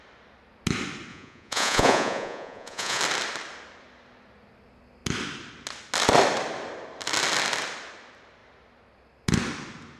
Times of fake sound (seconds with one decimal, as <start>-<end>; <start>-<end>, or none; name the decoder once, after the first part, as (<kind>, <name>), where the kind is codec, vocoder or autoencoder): 1.1-3.0 (vocoder, Vocos)